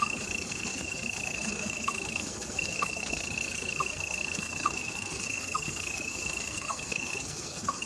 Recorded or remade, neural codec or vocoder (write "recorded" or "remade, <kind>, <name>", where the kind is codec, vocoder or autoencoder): remade, codec, SNAC